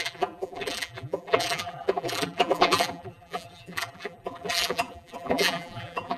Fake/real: fake